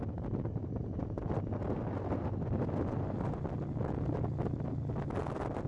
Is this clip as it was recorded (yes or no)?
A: yes